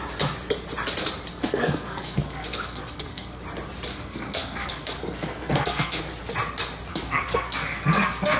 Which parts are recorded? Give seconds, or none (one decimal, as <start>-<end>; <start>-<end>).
0.0-1.3; 3.4-3.9; 6.0-6.9